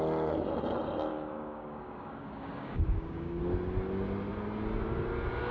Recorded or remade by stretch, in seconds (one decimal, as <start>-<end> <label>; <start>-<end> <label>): 0.0-1.1 recorded; 1.1-3.4 remade; 3.4-5.5 recorded